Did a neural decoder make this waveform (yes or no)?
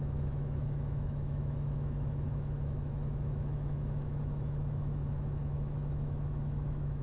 yes